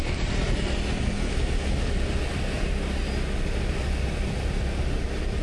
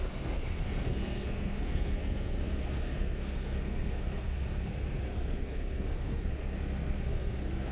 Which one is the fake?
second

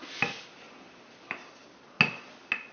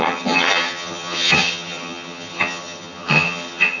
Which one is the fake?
second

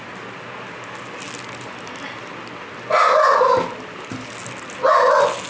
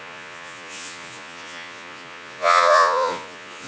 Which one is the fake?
second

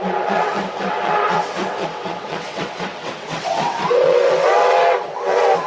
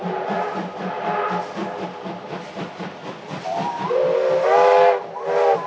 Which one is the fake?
first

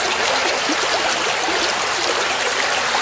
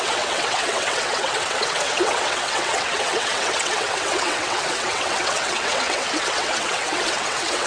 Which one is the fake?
second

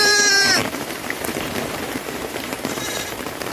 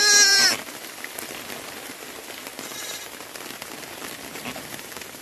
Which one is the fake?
first